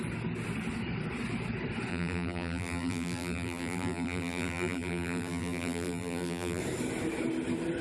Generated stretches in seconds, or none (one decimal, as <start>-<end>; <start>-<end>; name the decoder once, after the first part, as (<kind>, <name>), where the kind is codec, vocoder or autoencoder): 1.9-6.6 (vocoder, BigVGAN v2)